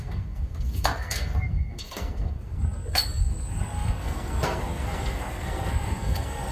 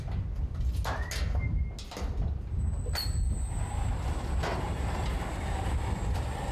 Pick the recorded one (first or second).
second